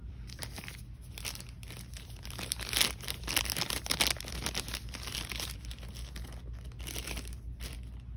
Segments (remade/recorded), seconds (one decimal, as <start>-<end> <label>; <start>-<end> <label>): 0.0-0.7 remade; 0.7-8.2 recorded